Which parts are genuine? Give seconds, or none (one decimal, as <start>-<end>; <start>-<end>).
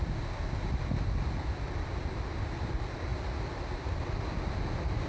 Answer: 0.0-5.1